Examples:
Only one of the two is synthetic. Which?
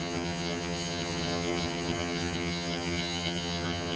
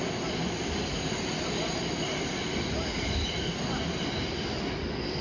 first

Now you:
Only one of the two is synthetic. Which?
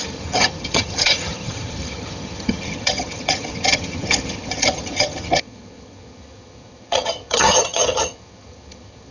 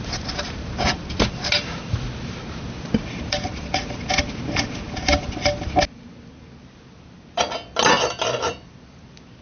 first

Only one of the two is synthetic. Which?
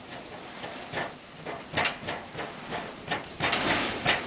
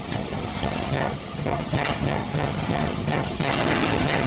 second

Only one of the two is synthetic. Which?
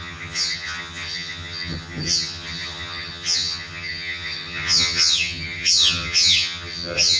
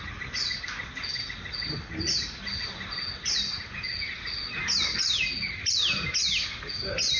first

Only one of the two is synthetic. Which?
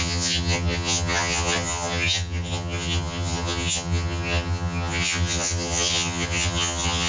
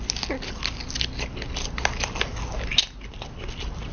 first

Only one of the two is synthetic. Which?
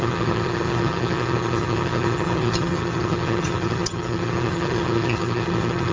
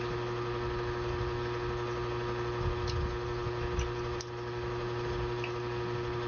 first